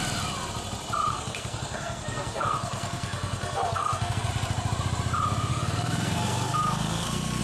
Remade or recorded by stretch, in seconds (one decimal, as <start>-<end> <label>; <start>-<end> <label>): 0.0-1.1 recorded; 1.1-4.3 remade; 4.3-5.5 recorded; 5.5-7.4 remade

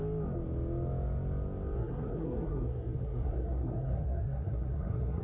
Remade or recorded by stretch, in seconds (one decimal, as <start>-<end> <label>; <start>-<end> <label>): 0.0-1.8 recorded; 1.8-5.2 remade

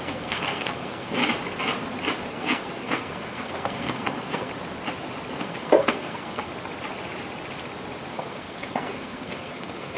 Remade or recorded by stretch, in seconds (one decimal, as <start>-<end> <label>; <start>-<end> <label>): 0.0-1.2 remade; 1.2-2.3 recorded; 2.3-4.5 remade; 4.5-5.3 recorded; 5.3-6.5 remade; 6.5-8.1 recorded; 8.1-10.0 remade

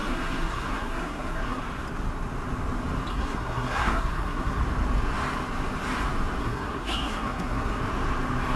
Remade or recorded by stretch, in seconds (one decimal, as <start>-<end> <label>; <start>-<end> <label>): 0.0-1.6 remade; 1.6-3.1 recorded; 3.1-4.6 remade; 4.6-6.4 recorded; 6.4-7.8 remade; 7.8-8.6 recorded